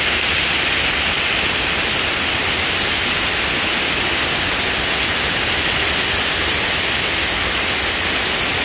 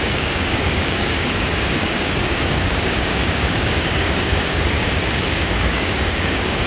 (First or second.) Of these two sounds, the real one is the first